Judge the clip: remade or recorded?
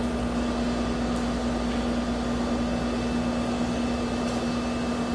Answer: recorded